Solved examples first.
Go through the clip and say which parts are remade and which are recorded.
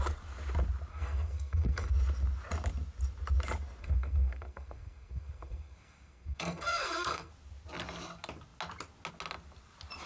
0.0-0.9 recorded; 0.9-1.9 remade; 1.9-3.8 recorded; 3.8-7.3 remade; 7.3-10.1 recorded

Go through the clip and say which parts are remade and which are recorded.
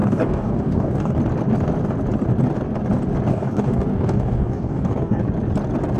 0.0-1.2 remade; 1.2-3.3 recorded; 3.3-5.2 remade; 5.2-6.0 recorded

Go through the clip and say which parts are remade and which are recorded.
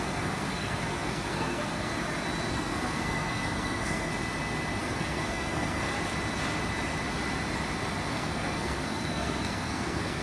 0.0-1.9 remade; 1.9-2.5 recorded; 2.5-4.1 remade; 4.1-4.8 recorded; 4.8-5.9 remade; 5.9-8.1 recorded; 8.1-10.2 remade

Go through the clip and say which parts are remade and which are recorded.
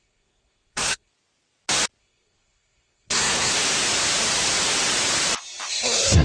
0.0-1.1 remade; 1.1-2.0 recorded; 2.0-3.5 remade; 3.5-5.7 recorded; 5.7-6.2 remade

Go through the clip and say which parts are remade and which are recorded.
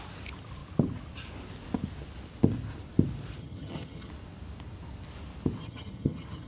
0.0-3.4 recorded; 3.4-4.1 remade; 4.1-5.6 recorded; 5.6-6.5 remade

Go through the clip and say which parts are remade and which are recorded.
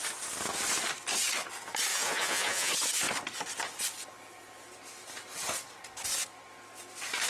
0.0-1.9 recorded; 1.9-2.7 remade; 2.7-7.3 recorded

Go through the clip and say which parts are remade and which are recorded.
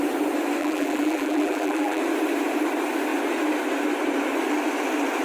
0.0-0.6 recorded; 0.6-2.0 remade; 2.0-5.2 recorded